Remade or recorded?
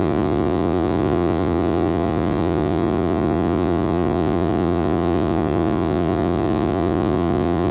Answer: remade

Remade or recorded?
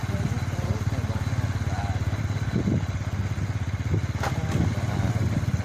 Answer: recorded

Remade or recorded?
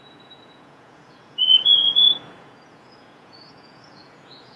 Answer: remade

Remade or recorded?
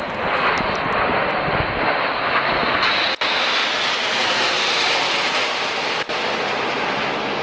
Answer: recorded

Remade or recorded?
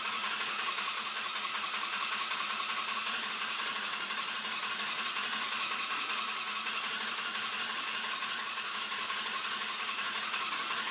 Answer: remade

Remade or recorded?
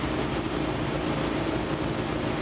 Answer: recorded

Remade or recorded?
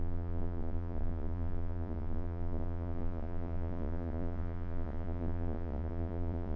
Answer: remade